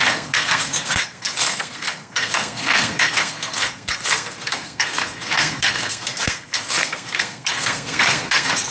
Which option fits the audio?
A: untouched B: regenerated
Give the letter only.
B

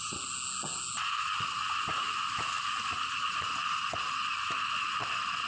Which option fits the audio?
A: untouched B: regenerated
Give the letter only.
A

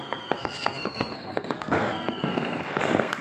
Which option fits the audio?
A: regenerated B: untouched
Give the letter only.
A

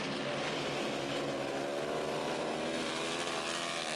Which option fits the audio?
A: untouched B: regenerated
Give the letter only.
A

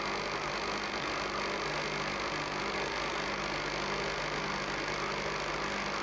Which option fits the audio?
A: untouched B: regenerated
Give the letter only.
A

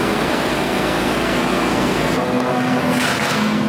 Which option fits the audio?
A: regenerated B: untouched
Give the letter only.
A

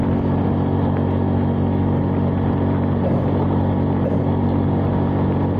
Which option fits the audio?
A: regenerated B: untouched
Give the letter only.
B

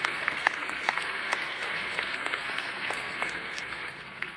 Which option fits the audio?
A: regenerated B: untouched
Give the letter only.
A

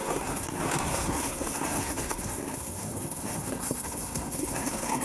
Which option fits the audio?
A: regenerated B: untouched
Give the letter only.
A